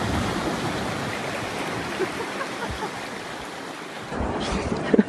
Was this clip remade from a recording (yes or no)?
yes